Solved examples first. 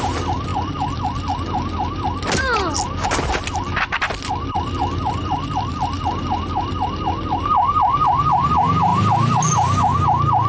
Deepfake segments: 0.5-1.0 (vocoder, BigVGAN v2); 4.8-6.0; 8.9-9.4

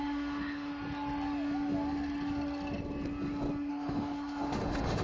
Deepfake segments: 0.0-0.7 (autoencoder, DAC-VAE); 3.7-5.0

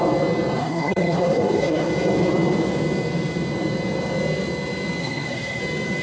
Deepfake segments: 0.6-1.9 (codec, SNAC); 5.0-5.6

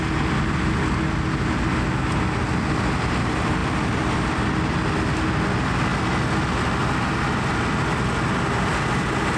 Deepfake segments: none

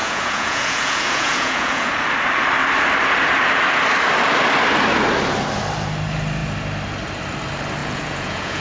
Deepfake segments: 0.0-1.9 (vocoder, Vocos); 7.8-8.6

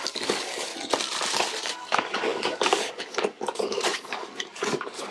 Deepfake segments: 0.0-0.7 (codec, DAC); 1.6-5.1

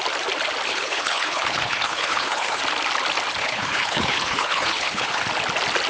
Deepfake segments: 0.7-2.6 (codec, HILCodec); 3.4-5.2

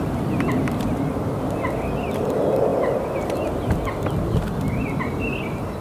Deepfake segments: none